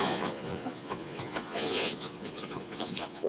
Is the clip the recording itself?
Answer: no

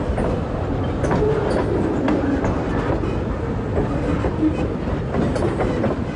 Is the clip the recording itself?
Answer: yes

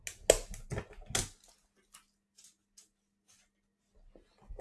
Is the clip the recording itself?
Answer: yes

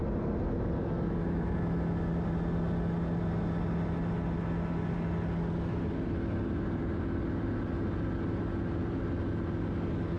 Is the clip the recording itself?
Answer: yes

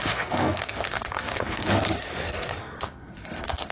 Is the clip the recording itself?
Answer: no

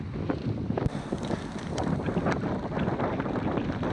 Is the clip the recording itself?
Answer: yes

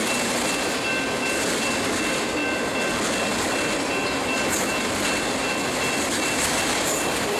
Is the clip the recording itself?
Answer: yes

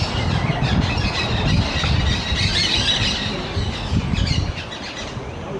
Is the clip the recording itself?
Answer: yes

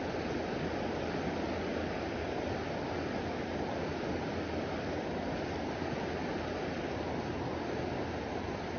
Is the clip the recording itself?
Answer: yes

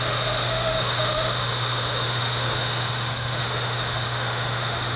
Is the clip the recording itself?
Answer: no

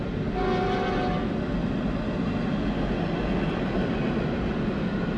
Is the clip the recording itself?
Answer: yes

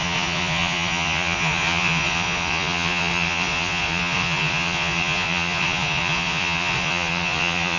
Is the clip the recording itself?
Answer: no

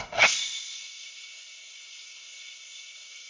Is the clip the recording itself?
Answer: no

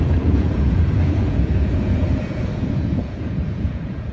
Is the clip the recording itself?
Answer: no